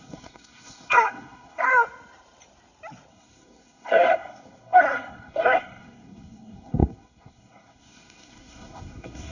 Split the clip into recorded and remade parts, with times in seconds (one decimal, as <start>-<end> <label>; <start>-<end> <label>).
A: 0.0-1.7 remade; 1.7-3.1 recorded; 3.1-9.3 remade